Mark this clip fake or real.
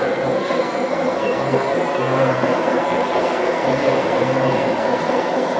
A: fake